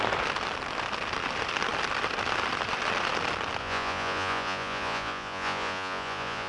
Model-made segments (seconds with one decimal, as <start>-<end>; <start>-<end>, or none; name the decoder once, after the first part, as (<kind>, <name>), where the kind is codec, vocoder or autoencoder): 3.6-6.5 (vocoder, Vocos)